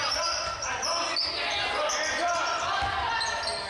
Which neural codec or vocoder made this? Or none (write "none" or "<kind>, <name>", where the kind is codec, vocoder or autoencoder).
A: none